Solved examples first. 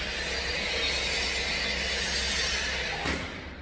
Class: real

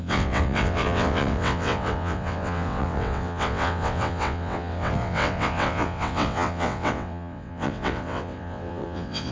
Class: fake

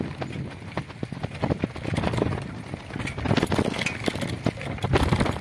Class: real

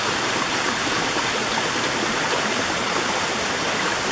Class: real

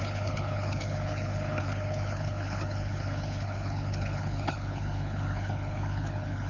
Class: fake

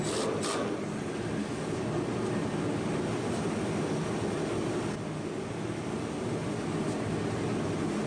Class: real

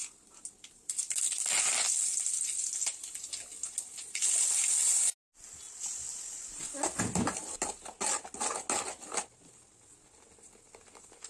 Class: real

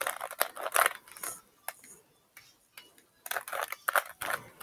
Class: real